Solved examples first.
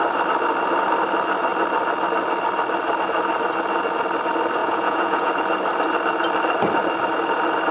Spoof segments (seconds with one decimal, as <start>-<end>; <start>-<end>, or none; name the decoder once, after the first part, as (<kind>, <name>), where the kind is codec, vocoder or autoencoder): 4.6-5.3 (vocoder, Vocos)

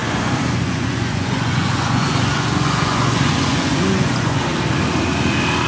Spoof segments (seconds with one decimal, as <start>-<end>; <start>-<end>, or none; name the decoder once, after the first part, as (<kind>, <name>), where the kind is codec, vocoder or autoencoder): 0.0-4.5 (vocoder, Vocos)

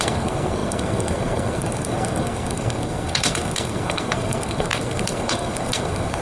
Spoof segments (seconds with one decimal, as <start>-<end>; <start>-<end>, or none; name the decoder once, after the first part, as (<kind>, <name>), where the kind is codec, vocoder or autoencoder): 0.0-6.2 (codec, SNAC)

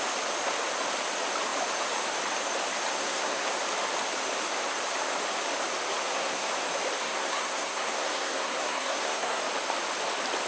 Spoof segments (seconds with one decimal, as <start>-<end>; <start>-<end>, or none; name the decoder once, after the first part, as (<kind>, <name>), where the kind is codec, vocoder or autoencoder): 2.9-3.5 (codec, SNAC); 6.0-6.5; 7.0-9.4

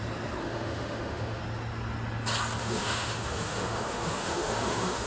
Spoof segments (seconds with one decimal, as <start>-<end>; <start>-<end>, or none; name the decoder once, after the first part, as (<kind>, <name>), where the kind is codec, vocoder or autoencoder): 0.4-1.4 (autoencoder, DAC-VAE); 2.6-5.1